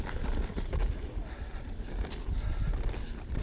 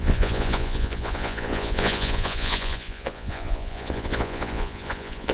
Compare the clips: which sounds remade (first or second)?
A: second